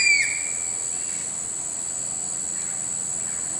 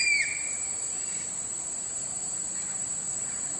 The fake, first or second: second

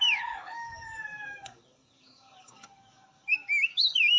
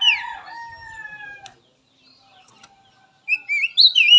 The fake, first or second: first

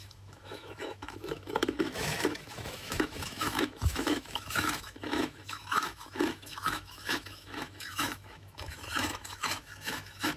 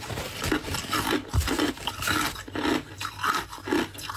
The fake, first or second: first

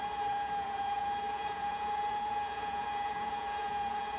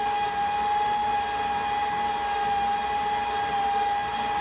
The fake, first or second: first